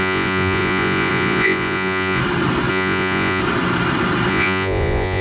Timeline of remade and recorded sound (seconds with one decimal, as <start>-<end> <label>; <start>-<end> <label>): 0.0-2.2 remade; 2.2-2.7 recorded; 2.7-3.4 remade; 3.4-4.3 recorded; 4.3-5.2 remade